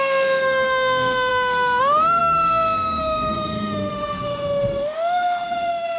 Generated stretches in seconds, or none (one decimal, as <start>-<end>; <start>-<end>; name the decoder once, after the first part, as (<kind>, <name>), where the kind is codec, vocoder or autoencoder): 0.0-6.0 (autoencoder, DAC-VAE)